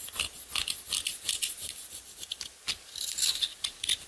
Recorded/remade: recorded